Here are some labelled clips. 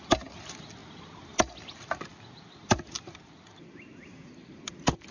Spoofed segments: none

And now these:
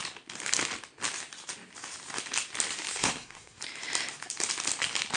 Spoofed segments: 2.9-3.6